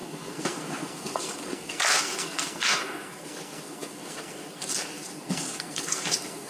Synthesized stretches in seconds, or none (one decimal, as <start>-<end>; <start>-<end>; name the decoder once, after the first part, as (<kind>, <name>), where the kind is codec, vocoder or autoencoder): 0.0-6.5 (codec, SNAC)